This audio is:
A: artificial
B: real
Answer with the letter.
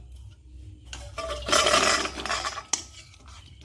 B